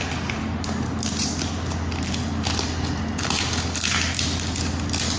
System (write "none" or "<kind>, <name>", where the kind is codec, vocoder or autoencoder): none